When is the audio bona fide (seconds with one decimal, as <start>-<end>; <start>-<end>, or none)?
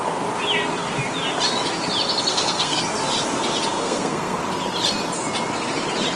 0.0-2.3; 2.8-3.7; 4.4-6.2